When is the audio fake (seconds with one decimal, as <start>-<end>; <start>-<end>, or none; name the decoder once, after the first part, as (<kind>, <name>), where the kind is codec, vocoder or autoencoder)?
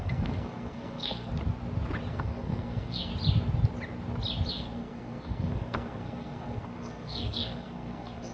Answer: 0.0-1.3 (codec, SNAC); 2.1-3.1; 4.5-8.3